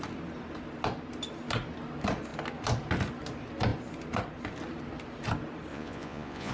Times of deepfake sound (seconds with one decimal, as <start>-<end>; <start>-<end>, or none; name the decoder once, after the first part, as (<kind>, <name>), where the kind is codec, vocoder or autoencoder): 5.7-6.5 (vocoder, Vocos)